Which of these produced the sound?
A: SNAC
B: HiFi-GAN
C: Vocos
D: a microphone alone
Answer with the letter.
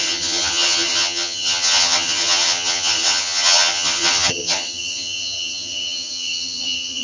B